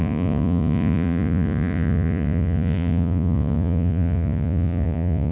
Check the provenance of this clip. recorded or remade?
remade